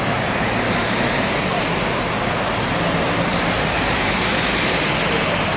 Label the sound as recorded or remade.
remade